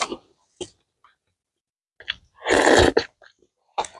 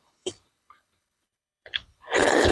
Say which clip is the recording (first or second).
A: first